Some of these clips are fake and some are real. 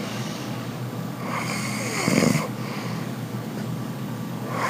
fake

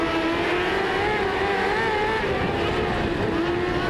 real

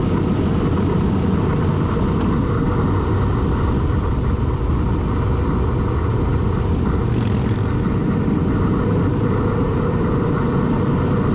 real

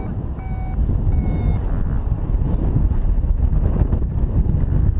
real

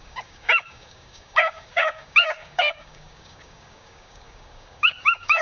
fake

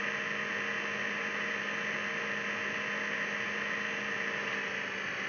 real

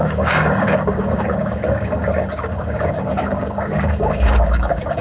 fake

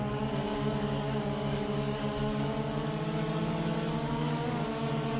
fake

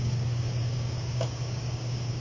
fake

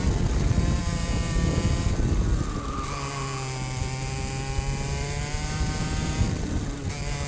real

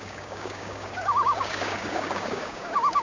fake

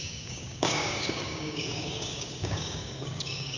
fake